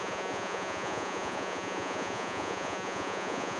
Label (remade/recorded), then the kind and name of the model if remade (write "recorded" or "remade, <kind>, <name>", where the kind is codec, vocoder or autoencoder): remade, vocoder, Vocos